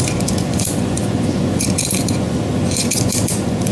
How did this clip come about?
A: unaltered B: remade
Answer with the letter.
B